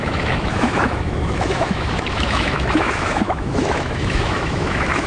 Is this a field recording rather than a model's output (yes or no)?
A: no